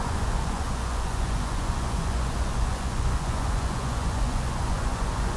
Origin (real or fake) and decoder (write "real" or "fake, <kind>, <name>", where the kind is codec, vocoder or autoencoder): fake, vocoder, Vocos